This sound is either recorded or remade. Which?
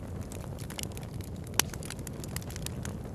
recorded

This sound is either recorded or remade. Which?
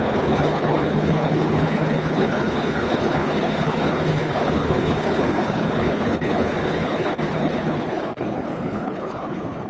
remade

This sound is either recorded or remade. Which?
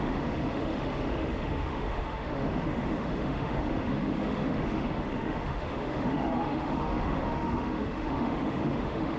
remade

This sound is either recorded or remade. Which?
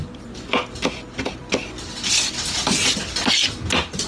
recorded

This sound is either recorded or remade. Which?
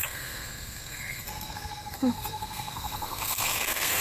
remade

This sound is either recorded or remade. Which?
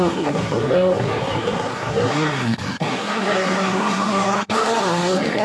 remade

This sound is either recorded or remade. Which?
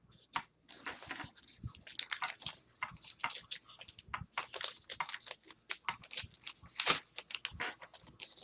recorded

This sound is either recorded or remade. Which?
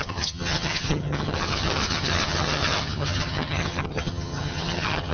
remade